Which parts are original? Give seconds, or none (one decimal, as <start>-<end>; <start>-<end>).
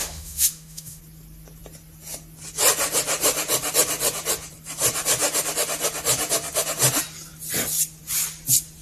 1.0-8.8